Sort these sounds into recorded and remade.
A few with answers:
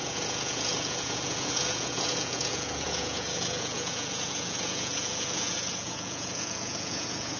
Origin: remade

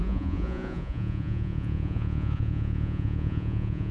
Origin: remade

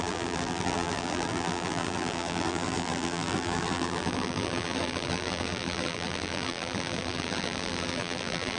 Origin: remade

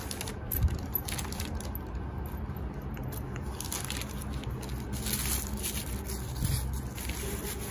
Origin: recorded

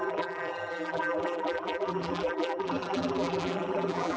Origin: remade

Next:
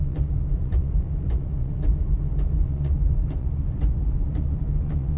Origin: remade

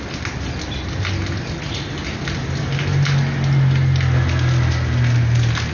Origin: recorded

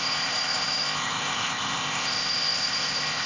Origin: remade